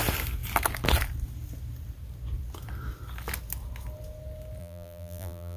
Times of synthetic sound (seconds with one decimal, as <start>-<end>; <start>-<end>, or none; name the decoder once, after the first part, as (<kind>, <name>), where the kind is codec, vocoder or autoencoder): 4.6-5.6 (vocoder, BigVGAN v2)